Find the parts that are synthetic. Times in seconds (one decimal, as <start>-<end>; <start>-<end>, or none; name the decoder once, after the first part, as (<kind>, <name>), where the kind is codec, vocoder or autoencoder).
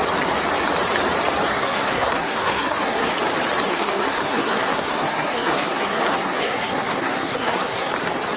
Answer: 1.5-3.1 (codec, SNAC); 3.7-7.9